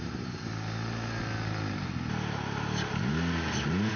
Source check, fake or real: real